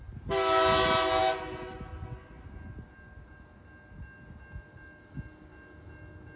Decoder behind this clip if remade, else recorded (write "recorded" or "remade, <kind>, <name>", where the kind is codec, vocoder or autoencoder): recorded